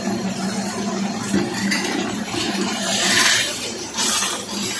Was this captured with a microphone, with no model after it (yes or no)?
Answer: no